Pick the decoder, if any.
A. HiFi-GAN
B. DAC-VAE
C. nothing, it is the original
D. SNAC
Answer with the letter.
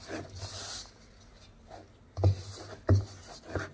C